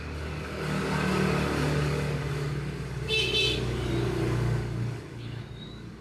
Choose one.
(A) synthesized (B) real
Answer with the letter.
A